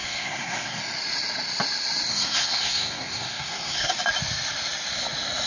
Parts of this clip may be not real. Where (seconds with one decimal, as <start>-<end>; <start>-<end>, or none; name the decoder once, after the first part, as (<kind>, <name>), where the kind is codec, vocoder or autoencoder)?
0.0-0.8 (codec, SNAC); 2.1-3.9